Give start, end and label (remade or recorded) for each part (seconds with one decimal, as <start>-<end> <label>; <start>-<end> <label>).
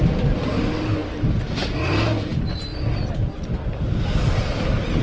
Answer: 0.0-5.0 recorded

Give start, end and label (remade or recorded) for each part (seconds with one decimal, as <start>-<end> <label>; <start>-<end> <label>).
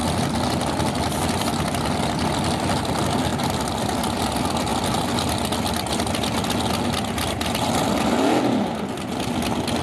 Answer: 0.0-9.8 recorded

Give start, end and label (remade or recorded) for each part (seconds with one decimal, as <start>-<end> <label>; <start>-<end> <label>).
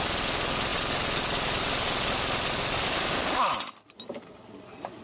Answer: 0.0-5.0 recorded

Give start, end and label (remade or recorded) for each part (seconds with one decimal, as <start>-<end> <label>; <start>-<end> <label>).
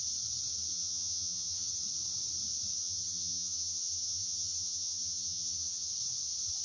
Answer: 0.0-0.7 recorded; 0.7-1.8 remade; 1.8-2.8 recorded; 2.8-5.9 remade; 5.9-6.6 recorded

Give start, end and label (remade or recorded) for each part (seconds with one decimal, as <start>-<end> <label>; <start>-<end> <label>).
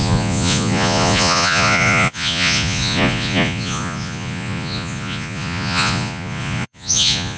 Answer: 0.0-7.4 remade